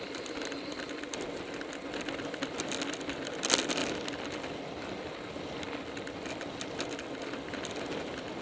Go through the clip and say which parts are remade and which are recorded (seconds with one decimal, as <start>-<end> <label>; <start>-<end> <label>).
0.0-8.4 recorded